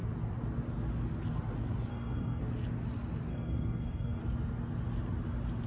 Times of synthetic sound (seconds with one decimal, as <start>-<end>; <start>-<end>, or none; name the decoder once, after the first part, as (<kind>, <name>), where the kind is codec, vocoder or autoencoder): 1.9-2.4 (codec, DAC); 3.3-4.2